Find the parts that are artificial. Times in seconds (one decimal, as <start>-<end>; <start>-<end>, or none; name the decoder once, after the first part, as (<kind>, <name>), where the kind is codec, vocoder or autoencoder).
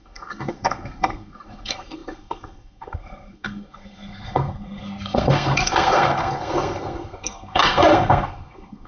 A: 0.0-8.9 (codec, SNAC)